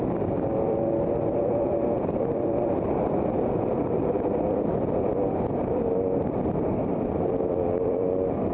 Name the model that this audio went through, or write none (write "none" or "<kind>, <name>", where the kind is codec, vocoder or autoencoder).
vocoder, BigVGAN v2